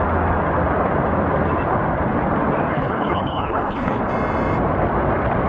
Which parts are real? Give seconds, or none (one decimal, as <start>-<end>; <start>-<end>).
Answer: 0.0-2.7; 4.0-5.5